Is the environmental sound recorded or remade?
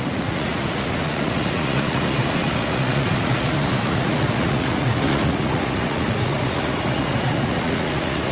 remade